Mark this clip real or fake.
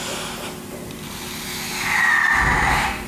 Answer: real